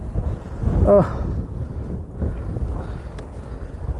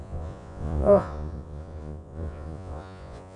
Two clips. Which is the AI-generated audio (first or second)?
second